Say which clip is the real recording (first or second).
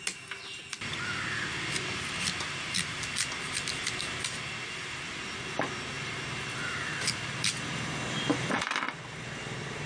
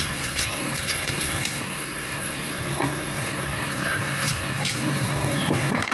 first